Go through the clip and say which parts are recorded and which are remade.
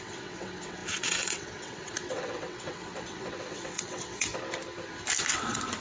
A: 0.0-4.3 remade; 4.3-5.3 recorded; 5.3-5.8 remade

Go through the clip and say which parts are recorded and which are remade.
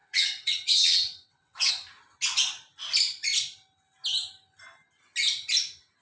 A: 0.0-1.7 remade; 1.7-6.0 recorded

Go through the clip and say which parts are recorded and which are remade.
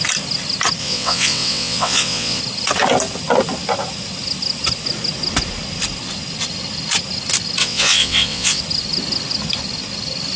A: 0.0-0.8 recorded; 0.8-2.4 remade; 2.4-7.6 recorded; 7.6-8.6 remade; 8.6-10.4 recorded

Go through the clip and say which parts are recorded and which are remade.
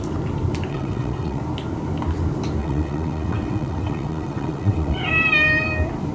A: 0.0-0.7 recorded; 0.7-1.4 remade; 1.4-2.6 recorded; 2.6-5.0 remade; 5.0-6.1 recorded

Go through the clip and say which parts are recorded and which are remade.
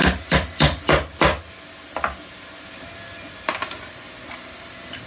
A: 0.0-5.1 recorded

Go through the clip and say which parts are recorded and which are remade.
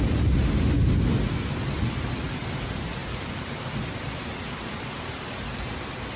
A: 0.0-6.2 recorded